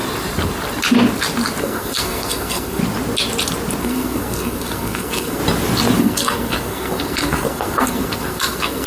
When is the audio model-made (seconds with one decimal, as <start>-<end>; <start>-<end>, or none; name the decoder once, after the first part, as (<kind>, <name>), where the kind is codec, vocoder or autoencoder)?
1.6-2.8 (codec, SNAC); 3.8-5.4; 6.0-8.9